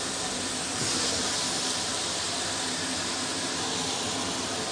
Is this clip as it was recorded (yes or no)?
yes